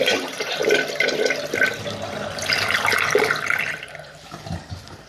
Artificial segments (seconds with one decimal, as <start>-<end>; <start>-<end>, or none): 0.0-0.6; 3.7-5.1